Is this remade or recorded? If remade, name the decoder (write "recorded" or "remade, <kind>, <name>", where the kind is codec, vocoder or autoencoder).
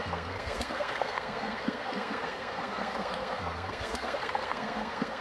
remade, codec, SNAC